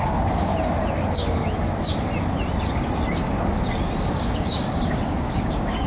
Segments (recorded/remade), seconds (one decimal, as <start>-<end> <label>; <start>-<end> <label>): 0.0-0.5 remade; 0.5-4.0 recorded; 4.0-5.9 remade

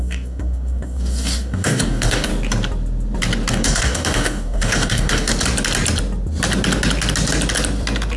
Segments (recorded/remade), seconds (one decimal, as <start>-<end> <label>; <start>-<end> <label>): 0.0-2.3 remade; 2.3-3.5 recorded; 3.5-5.3 remade; 5.3-8.2 recorded

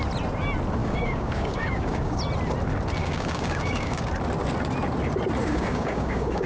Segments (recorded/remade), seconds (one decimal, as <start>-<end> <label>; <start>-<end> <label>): 0.0-0.8 recorded; 0.8-2.2 remade; 2.2-3.0 recorded; 3.0-4.1 remade; 4.1-5.4 recorded; 5.4-6.5 remade

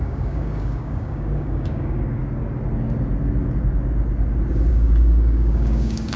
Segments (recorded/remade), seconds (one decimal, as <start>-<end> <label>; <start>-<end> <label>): 0.0-2.2 remade; 2.2-4.7 recorded; 4.7-6.2 remade

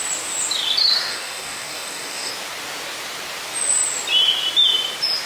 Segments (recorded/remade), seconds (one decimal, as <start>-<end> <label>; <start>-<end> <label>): 0.0-1.1 recorded; 1.1-2.3 remade; 2.3-5.3 recorded

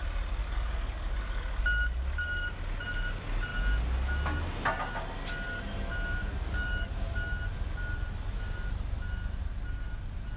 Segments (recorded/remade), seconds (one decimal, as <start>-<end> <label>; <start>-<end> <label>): 0.0-0.4 recorded; 0.4-1.6 remade; 1.6-6.3 recorded; 6.3-6.9 remade; 6.9-10.4 recorded